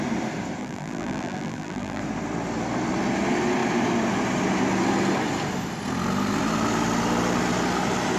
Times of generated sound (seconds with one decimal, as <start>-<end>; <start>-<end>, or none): 0.6-2.0

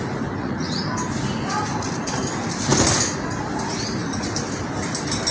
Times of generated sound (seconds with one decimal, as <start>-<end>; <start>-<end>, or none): 0.4-0.9

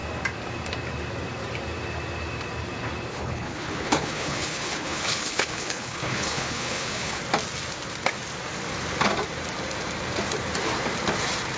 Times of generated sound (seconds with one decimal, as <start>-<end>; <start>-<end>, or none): 3.1-7.2